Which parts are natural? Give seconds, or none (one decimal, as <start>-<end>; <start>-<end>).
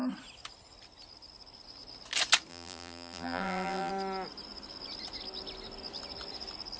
0.0-2.5; 3.9-6.8